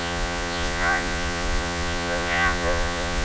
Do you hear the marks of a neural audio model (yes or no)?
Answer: yes